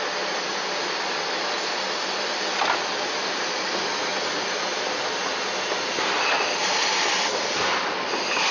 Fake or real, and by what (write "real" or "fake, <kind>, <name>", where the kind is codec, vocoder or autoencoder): real